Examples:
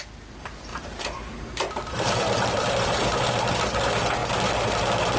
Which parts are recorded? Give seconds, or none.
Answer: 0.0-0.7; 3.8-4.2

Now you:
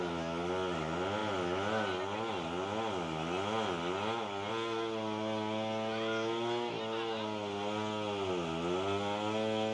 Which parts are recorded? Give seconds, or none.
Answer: 0.0-9.7

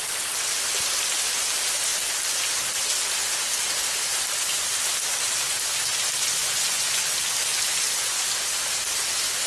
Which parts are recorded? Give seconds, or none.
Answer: 0.0-6.4; 7.0-7.5; 8.2-9.5

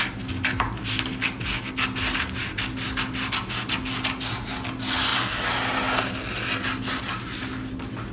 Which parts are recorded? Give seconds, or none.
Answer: 0.0-8.1

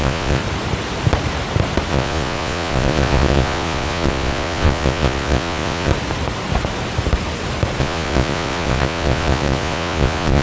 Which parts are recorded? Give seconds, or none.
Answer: 0.4-1.9; 5.9-7.8